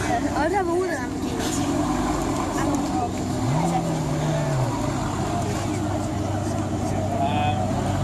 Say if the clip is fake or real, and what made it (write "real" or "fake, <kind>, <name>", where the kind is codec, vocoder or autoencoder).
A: real